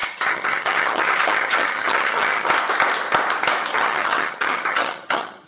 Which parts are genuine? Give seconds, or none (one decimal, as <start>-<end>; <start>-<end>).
2.5-3.7